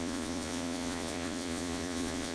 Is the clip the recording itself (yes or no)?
no